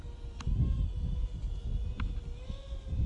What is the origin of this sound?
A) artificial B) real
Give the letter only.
B